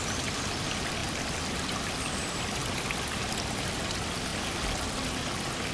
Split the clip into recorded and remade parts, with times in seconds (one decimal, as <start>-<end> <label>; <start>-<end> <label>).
0.0-5.7 recorded